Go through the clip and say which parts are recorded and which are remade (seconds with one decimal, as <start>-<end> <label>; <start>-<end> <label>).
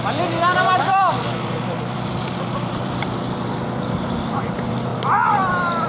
0.0-5.9 remade